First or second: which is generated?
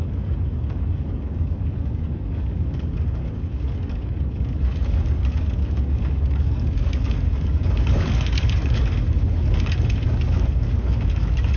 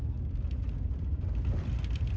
first